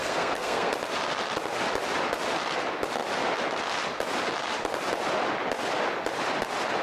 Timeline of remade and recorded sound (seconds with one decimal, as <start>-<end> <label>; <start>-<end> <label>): 0.0-0.7 remade; 0.7-6.8 recorded